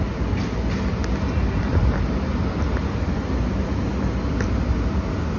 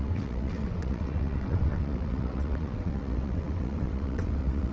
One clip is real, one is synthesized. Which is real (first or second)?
first